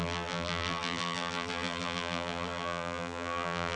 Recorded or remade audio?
remade